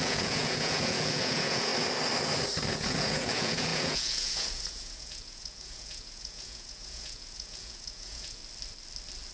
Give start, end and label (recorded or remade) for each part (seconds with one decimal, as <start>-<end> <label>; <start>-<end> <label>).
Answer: 0.0-1.7 remade; 1.7-2.7 recorded; 2.7-8.4 remade; 8.4-9.3 recorded

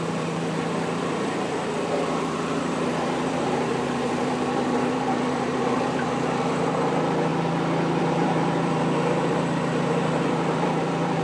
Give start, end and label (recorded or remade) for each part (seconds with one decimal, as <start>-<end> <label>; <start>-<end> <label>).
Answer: 0.0-7.3 remade; 7.3-8.0 recorded; 8.0-11.2 remade

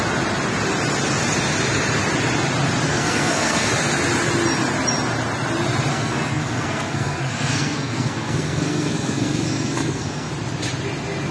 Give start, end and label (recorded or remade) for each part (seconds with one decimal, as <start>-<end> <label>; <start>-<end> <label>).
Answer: 0.0-2.9 recorded; 2.9-3.7 remade; 3.7-5.9 recorded; 5.9-10.3 remade; 10.3-11.3 recorded

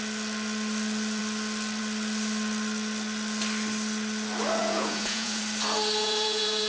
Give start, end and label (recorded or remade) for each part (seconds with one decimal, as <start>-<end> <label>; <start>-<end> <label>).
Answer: 0.0-4.6 recorded; 4.6-5.4 remade; 5.4-6.0 recorded; 6.0-6.7 remade

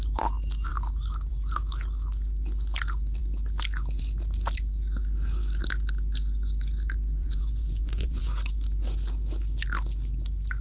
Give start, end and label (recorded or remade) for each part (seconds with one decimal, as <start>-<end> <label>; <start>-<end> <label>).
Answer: 0.0-7.2 recorded; 7.2-8.2 remade; 8.2-10.6 recorded

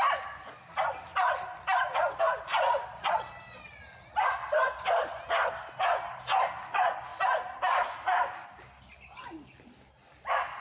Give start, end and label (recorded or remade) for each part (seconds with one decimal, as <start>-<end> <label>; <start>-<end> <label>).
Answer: 0.0-1.1 recorded; 1.1-2.2 remade; 2.2-10.6 recorded

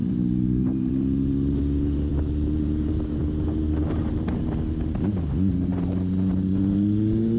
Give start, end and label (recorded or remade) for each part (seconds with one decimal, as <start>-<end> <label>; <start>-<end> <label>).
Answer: 0.0-0.9 remade; 0.9-2.1 recorded; 2.1-4.4 remade; 4.4-5.7 recorded; 5.7-6.3 remade; 6.3-7.4 recorded